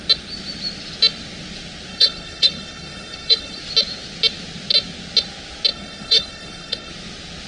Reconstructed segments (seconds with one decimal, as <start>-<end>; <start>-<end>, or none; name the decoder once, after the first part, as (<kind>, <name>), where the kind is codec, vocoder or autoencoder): 1.9-3.6 (codec, HILCodec); 5.7-6.9